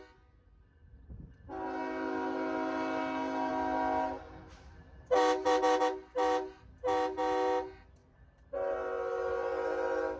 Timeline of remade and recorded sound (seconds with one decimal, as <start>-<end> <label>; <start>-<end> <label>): 0.0-10.2 recorded

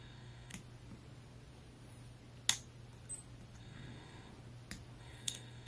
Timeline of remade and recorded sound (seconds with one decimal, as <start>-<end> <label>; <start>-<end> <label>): 0.0-0.5 remade; 0.5-3.6 recorded; 3.6-4.3 remade; 4.3-5.0 recorded; 5.0-5.7 remade

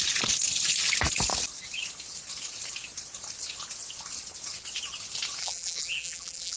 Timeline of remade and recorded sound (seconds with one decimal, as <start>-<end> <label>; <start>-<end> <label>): 0.0-5.4 recorded; 5.4-6.6 remade

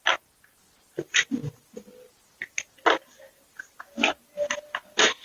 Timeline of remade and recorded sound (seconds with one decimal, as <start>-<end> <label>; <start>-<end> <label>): 0.0-5.2 recorded

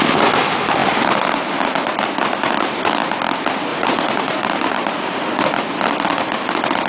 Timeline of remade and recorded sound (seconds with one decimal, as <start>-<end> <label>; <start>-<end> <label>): 0.0-3.7 recorded; 3.7-5.3 remade; 5.3-6.9 recorded

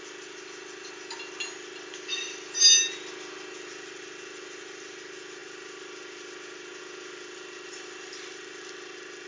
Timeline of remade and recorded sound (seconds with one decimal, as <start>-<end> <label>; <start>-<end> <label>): 0.0-9.3 recorded

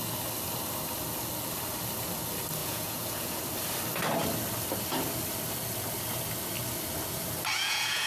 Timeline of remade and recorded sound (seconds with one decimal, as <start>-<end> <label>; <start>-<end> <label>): 0.0-2.6 recorded; 2.6-3.4 remade; 3.4-7.5 recorded; 7.5-8.1 remade

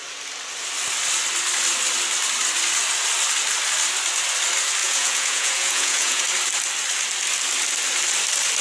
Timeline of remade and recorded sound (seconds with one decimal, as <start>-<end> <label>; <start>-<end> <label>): 0.0-4.8 recorded; 4.8-6.2 remade; 6.2-8.6 recorded